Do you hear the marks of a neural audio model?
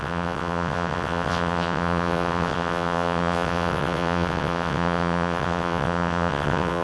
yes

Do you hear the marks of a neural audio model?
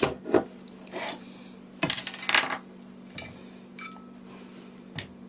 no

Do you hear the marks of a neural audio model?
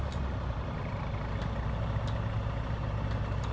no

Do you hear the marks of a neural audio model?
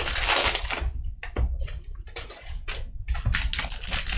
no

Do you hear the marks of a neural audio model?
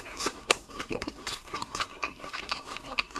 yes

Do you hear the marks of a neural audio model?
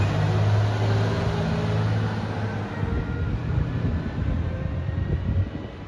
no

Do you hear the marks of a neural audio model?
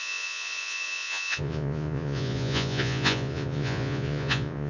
yes